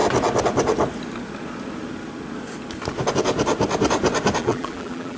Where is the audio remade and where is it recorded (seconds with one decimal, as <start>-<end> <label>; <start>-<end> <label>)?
0.0-4.4 recorded; 4.4-5.2 remade